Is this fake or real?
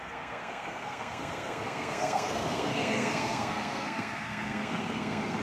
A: fake